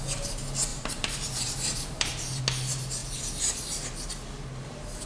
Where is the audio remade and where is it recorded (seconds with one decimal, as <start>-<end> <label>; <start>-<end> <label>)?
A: 0.0-0.7 recorded; 0.7-2.4 remade; 2.4-5.1 recorded